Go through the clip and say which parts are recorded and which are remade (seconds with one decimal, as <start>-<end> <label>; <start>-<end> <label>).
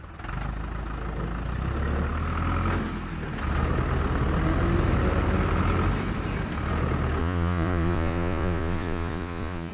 0.0-7.2 recorded; 7.2-9.7 remade